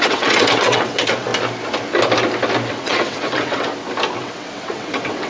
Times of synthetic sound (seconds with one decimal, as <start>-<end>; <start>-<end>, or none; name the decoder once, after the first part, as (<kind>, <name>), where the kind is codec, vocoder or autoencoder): 0.0-1.3 (vocoder, WaveNeXt); 2.7-3.7; 4.2-5.3